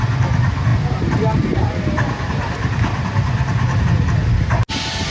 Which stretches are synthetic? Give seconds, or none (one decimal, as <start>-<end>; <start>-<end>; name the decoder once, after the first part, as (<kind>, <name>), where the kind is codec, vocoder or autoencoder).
0.7-3.8 (vocoder, BigVGAN v2)